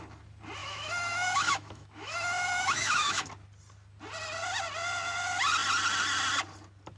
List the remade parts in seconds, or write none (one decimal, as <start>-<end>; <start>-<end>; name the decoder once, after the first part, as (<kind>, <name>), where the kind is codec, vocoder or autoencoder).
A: 0.6-3.3 (autoencoder, DAC-VAE)